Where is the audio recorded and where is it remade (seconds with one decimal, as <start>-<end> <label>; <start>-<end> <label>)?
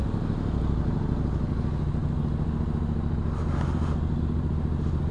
0.0-5.1 recorded